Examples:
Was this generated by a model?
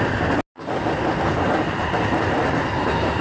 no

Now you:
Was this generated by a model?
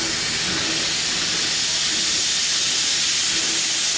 no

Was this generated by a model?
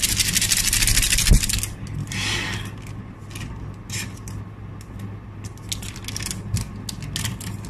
no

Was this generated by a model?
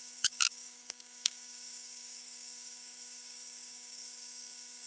yes